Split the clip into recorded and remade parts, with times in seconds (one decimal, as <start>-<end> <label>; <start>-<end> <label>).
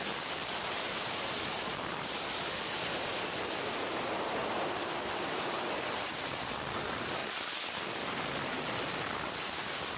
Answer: 0.0-0.4 remade; 0.4-1.2 recorded; 1.2-7.2 remade; 7.2-10.0 recorded